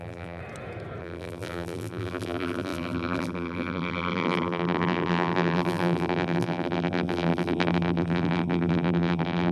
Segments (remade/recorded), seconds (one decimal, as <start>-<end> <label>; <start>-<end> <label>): 0.0-0.4 remade; 0.4-1.0 recorded; 1.0-9.5 remade